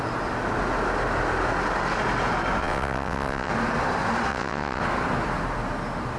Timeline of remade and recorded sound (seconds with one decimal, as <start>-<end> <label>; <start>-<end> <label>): 0.0-2.6 recorded; 2.6-3.5 remade; 3.5-4.3 recorded; 4.3-4.8 remade; 4.8-6.2 recorded